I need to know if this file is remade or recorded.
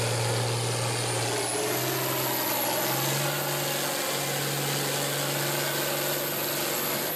recorded